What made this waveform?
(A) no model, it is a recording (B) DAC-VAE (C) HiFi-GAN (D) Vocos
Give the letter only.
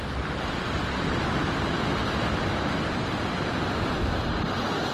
A